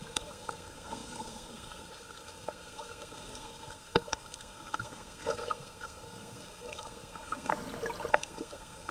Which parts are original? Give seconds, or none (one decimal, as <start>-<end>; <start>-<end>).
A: 7.5-8.1